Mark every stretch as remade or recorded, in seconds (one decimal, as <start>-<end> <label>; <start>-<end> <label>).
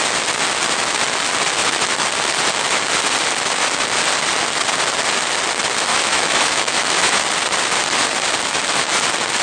0.0-5.9 recorded; 5.9-7.2 remade; 7.2-9.4 recorded